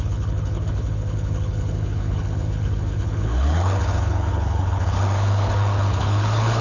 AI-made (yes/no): yes